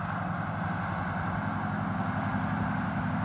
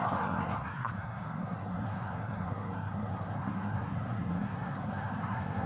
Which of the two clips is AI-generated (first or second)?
second